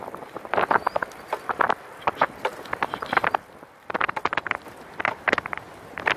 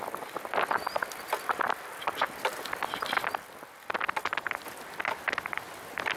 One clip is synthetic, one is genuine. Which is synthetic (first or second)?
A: first